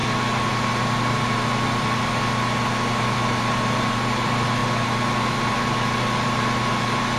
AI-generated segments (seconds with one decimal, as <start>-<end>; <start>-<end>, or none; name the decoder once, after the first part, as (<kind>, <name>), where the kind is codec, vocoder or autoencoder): none